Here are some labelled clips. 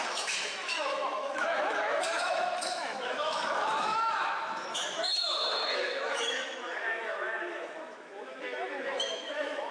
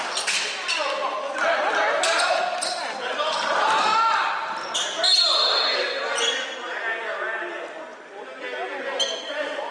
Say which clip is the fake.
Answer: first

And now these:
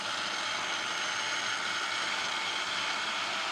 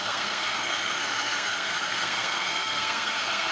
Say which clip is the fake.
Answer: second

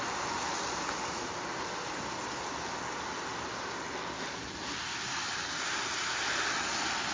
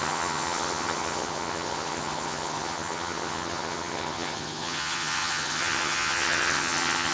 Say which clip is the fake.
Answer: second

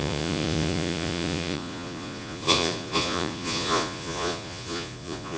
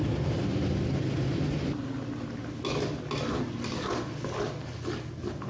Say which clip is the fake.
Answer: first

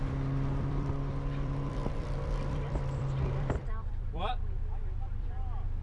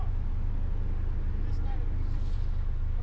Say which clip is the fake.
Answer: first